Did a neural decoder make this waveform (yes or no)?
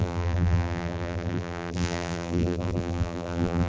yes